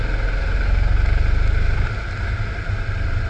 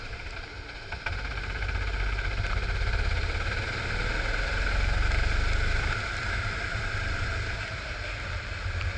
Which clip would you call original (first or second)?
first